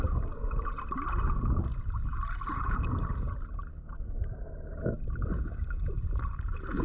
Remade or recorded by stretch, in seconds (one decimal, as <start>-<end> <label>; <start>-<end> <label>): 0.0-3.7 recorded; 3.7-4.2 remade; 4.2-6.8 recorded

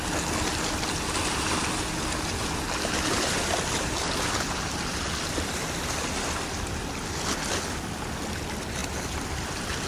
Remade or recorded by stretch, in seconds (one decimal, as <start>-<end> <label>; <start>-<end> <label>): 0.0-9.9 recorded

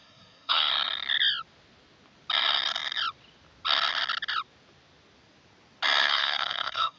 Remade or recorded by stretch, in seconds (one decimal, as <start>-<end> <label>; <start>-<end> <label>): 0.0-0.7 remade; 0.7-6.0 recorded; 6.0-7.0 remade

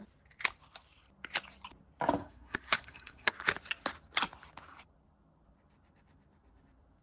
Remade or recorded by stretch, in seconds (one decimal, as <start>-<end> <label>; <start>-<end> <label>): 0.0-2.2 recorded; 2.2-3.3 remade; 3.3-7.0 recorded

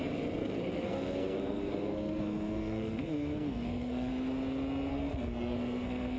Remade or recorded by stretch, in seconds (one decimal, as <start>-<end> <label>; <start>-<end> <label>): 0.0-0.4 recorded; 0.4-4.1 remade; 4.1-4.9 recorded; 4.9-6.2 remade